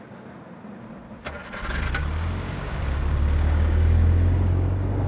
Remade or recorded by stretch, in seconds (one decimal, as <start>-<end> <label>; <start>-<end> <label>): 0.0-2.0 recorded; 2.0-5.1 remade